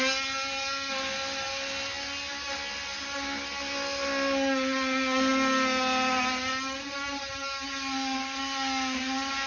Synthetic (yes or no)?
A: no